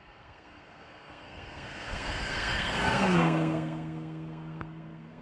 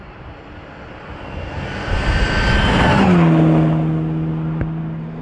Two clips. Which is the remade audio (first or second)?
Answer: first